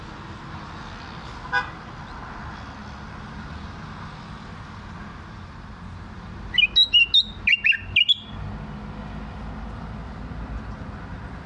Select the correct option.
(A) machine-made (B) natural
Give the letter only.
B